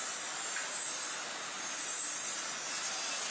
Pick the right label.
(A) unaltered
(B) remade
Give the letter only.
B